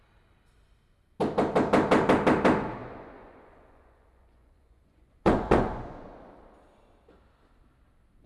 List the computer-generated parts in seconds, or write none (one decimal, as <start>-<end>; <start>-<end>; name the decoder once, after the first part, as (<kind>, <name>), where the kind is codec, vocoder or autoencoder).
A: 2.8-6.3 (vocoder, Vocos)